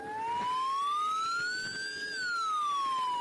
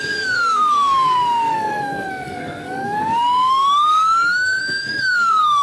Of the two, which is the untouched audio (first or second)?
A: first